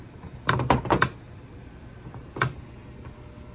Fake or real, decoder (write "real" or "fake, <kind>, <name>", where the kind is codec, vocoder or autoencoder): real